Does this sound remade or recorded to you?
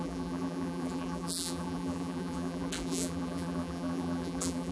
remade